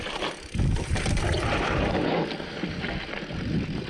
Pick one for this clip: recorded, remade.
remade